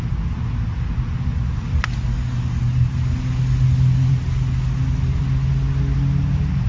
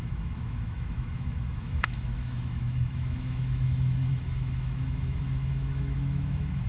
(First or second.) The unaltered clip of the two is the first